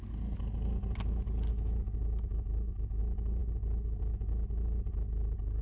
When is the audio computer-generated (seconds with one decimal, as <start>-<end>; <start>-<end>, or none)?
1.5-3.0

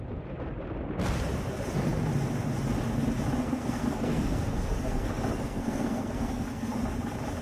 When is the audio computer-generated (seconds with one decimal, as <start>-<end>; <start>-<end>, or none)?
3.4-6.8

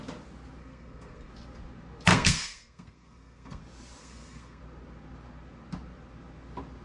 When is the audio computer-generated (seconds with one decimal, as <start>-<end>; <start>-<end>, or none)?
0.6-1.3; 2.1-3.6; 4.0-4.6

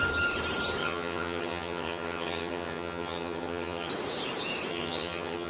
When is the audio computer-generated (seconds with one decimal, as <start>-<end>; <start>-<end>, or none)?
0.8-3.9; 4.7-5.5